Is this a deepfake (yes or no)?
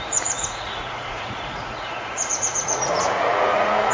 yes